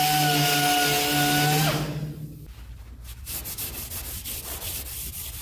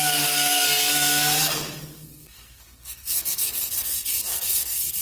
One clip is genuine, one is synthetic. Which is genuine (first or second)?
first